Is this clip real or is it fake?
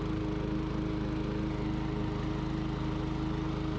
real